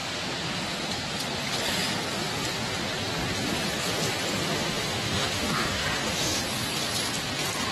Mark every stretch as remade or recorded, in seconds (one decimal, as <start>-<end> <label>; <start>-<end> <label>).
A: 0.0-4.4 recorded; 4.4-6.4 remade; 6.4-7.7 recorded